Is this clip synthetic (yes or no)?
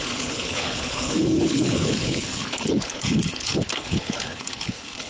yes